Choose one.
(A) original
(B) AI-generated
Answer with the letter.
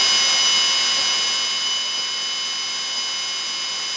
A